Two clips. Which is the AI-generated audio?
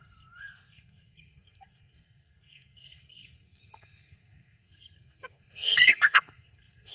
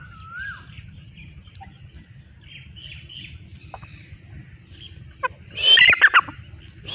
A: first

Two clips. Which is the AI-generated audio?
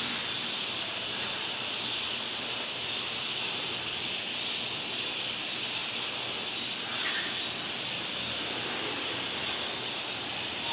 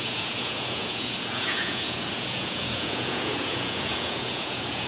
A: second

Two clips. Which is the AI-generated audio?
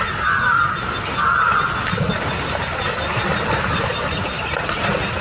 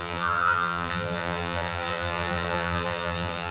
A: second